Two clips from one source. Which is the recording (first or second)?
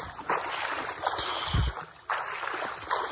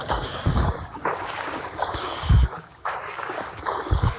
first